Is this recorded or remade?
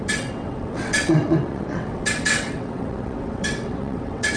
remade